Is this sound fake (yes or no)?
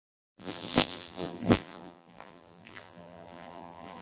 yes